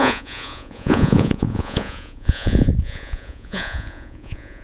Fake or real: fake